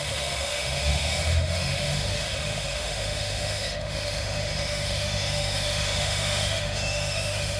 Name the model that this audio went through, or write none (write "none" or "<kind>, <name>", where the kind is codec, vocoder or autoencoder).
autoencoder, DAC-VAE